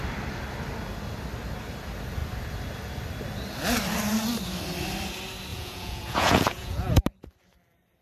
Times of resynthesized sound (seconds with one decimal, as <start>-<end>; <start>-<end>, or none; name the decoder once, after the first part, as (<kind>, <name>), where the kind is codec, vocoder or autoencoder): 5.5-7.0 (vocoder, Vocos)